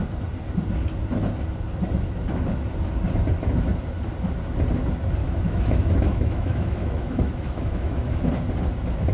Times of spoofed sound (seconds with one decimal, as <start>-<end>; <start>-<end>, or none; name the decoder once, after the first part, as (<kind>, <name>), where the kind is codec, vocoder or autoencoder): 5.2-8.3 (autoencoder, DAC-VAE)